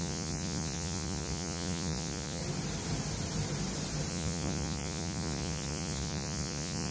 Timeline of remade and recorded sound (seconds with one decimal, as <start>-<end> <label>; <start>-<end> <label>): 0.0-2.4 remade; 2.4-4.1 recorded; 4.1-6.9 remade